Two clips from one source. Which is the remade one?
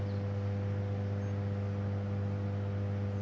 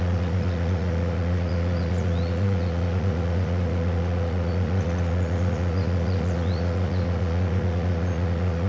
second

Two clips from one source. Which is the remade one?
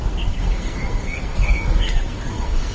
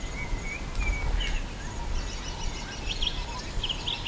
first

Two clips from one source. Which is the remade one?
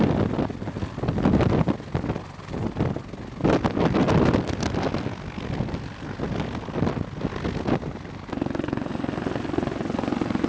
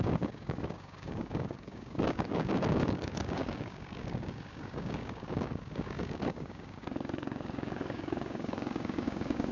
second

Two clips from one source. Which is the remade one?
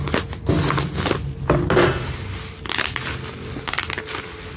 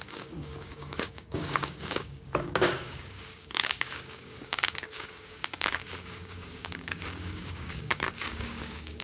second